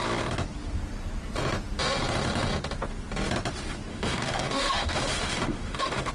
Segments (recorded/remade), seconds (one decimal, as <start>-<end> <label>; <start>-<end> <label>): 0.0-3.9 recorded; 3.9-6.1 remade